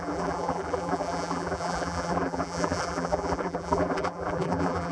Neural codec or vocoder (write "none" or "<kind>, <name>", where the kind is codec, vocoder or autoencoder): vocoder, BigVGAN v2